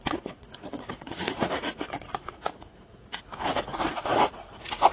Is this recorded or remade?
remade